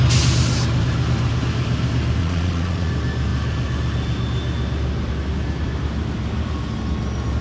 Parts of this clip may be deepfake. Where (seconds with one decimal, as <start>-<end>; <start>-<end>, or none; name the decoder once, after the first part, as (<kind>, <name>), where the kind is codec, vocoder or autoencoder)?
2.2-2.9 (vocoder, Vocos)